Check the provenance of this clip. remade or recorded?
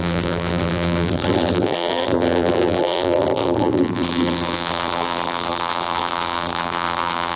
remade